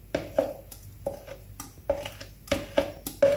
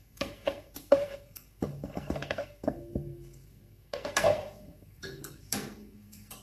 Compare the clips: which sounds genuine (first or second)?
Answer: first